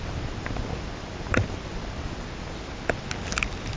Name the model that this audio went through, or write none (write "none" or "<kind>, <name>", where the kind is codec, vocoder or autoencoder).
none